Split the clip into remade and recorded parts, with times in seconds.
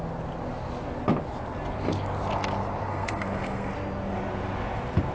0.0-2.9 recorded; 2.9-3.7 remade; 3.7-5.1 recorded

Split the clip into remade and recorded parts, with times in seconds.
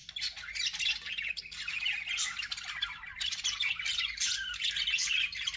0.0-5.6 recorded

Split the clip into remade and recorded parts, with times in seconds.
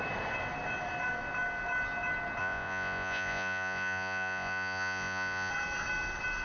0.0-2.4 recorded; 2.4-5.5 remade; 5.5-6.4 recorded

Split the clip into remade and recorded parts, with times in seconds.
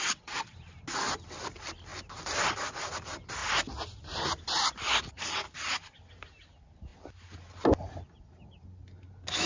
0.0-9.5 recorded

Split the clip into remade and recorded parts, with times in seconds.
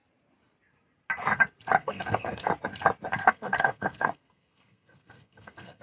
0.0-1.8 recorded; 1.8-2.5 remade; 2.5-3.2 recorded; 3.2-5.8 remade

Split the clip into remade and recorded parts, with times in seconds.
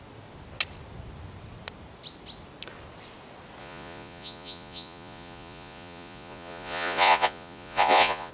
0.0-3.6 recorded; 3.6-8.3 remade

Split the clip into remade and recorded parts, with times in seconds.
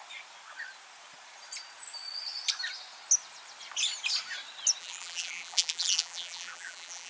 0.0-4.8 recorded; 4.8-7.1 remade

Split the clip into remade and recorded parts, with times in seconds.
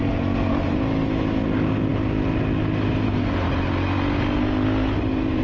0.0-5.4 recorded